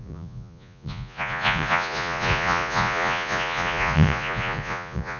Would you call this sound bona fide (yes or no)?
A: no